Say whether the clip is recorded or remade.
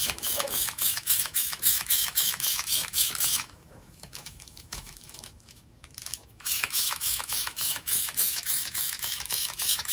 remade